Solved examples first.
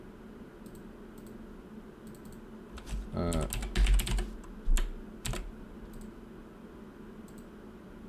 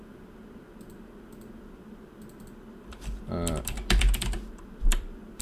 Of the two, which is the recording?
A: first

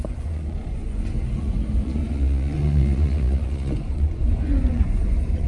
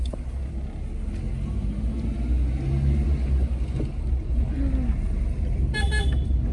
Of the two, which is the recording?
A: second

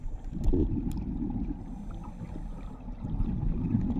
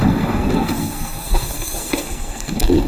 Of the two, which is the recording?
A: first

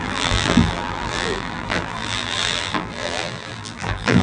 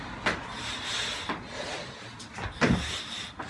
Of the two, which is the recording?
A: second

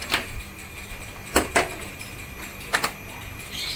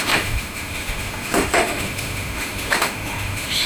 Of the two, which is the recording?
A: first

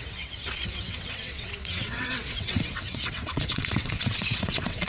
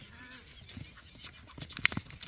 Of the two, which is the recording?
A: second